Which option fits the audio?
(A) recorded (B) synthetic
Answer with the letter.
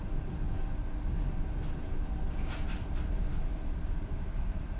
A